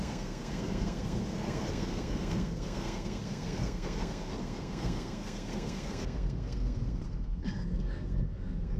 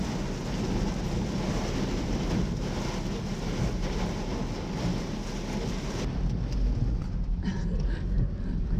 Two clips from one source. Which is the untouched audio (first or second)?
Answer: second